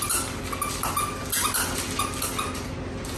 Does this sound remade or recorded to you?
recorded